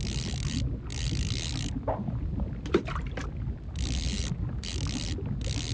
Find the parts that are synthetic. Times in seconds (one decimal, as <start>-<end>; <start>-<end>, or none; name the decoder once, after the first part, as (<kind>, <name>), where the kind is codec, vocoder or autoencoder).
none